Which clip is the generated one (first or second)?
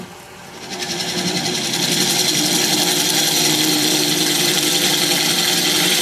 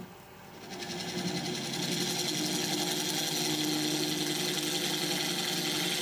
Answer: first